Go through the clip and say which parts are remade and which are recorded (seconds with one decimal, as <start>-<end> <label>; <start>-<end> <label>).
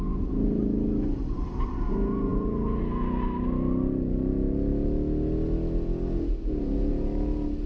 0.0-7.7 recorded